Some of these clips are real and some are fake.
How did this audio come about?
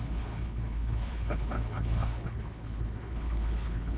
fake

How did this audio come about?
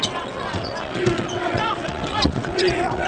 fake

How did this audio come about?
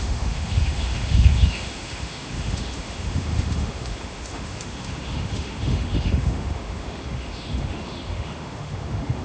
fake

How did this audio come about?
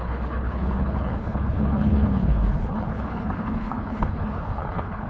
fake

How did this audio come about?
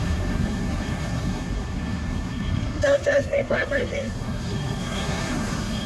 fake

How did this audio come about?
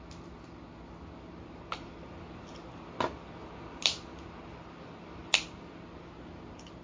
real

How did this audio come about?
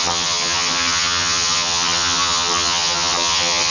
fake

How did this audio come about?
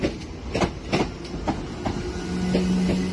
real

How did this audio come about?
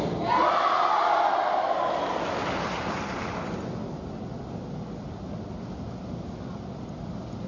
real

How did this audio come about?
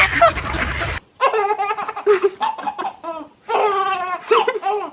real